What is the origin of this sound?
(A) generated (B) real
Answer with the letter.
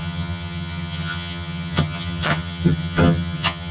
A